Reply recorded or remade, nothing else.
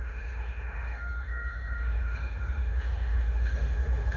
remade